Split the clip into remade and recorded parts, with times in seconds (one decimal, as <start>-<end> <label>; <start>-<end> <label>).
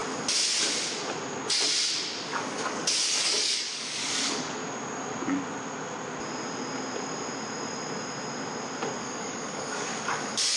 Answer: 0.0-2.3 recorded; 2.3-4.6 remade; 4.6-9.0 recorded; 9.0-10.6 remade